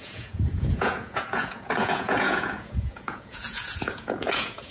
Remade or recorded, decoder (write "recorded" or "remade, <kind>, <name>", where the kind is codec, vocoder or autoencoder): remade, vocoder, Vocos